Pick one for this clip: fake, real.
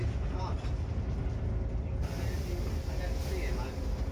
real